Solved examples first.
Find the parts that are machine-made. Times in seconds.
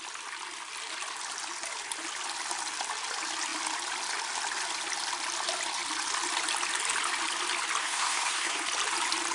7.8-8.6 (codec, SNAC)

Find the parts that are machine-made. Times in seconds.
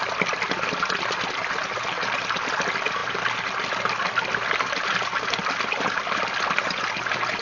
none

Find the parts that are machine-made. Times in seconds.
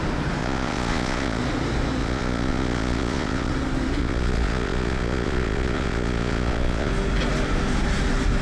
0.4-1.4 (vocoder, Vocos); 2.0-3.5; 4.0-6.9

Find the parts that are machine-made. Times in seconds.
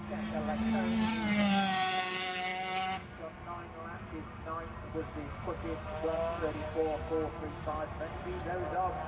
none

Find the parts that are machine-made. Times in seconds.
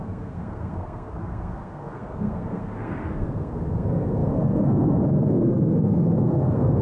0.0-6.8 (codec, SNAC)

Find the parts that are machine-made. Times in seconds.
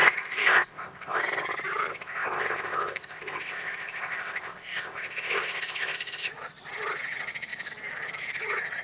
0.0-1.2 (codec, ZipCodec); 1.9-6.3